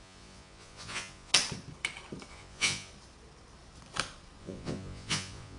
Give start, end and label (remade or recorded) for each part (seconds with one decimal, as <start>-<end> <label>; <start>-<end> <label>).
0.0-1.3 remade; 1.3-2.3 recorded; 2.3-2.9 remade; 2.9-4.4 recorded; 4.4-5.6 remade